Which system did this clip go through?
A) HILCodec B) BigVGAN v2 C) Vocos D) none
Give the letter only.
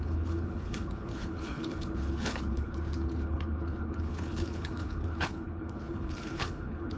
A